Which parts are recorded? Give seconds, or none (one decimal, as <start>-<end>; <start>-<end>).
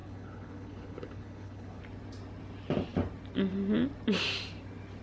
1.8-5.0